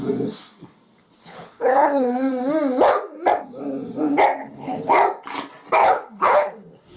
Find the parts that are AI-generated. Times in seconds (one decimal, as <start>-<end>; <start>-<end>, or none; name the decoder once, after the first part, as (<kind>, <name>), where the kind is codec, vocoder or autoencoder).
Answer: 1.0-2.3 (codec, HILCodec); 4.4-4.9; 5.8-7.0